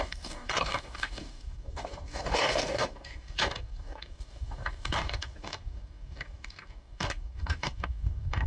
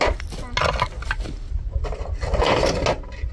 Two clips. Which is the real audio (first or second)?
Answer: second